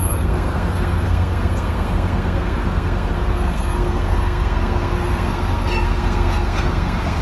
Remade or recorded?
remade